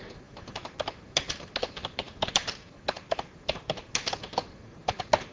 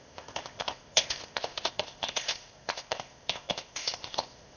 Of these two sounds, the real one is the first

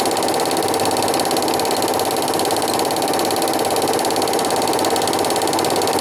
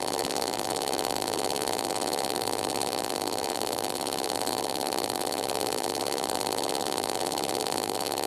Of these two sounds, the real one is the first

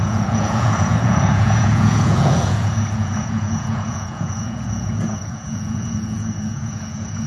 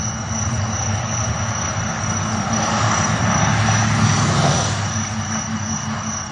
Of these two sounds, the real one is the second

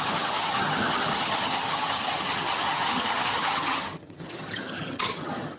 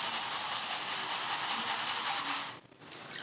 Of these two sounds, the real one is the second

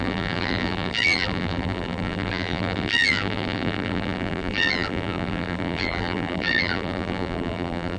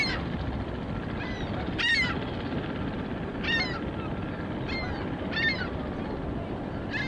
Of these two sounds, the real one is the second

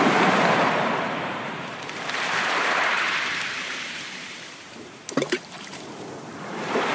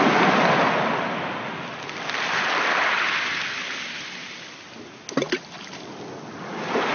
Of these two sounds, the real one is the second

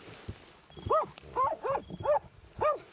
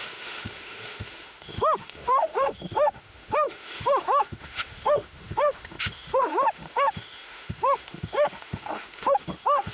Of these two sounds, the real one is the first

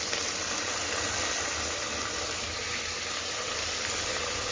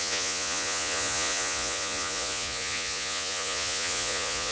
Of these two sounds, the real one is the first